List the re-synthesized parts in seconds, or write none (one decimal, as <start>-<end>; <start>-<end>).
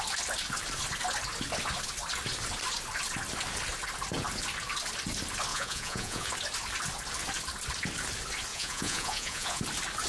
5.5-6.3; 8.5-9.6